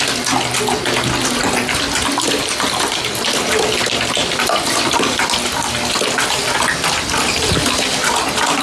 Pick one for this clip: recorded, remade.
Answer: recorded